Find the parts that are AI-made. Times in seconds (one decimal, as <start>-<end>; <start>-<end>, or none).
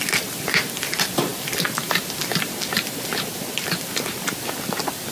none